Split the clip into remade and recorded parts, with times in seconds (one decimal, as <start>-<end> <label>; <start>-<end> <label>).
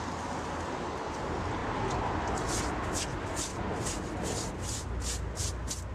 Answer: 0.0-5.9 recorded